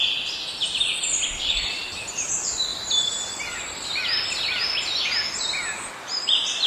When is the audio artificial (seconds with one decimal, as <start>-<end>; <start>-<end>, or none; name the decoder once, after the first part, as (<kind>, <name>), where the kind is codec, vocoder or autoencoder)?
none